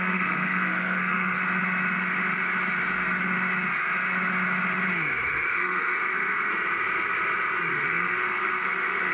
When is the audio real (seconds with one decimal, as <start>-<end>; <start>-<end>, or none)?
1.4-5.5; 6.5-7.7